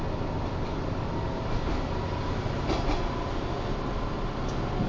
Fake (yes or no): no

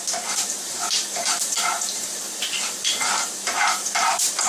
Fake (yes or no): yes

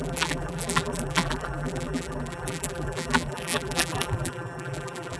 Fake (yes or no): yes